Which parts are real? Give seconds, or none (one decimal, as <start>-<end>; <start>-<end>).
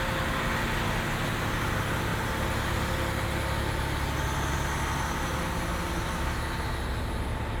0.0-7.6